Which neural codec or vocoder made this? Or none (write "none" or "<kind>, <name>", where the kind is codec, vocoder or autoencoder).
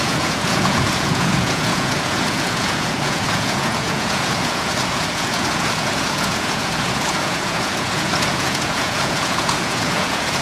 vocoder, Vocos